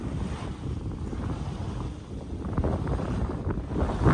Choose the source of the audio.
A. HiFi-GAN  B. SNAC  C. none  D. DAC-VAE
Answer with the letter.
C